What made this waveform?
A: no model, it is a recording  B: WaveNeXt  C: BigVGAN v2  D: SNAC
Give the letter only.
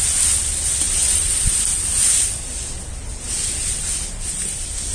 A